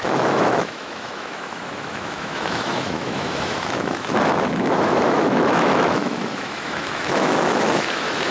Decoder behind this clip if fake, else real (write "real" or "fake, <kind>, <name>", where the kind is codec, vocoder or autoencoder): fake, autoencoder, DAC-VAE